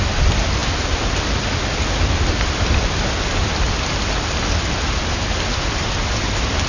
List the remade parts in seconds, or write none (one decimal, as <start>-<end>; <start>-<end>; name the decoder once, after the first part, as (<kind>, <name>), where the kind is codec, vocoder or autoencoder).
none